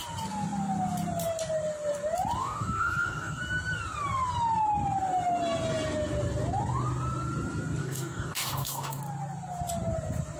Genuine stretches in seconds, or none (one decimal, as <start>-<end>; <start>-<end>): 0.0-2.4; 3.4-7.8; 9.0-10.4